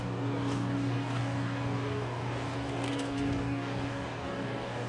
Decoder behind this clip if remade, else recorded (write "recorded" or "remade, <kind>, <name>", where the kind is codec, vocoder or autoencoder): remade, codec, DAC